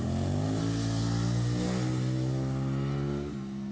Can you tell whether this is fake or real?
real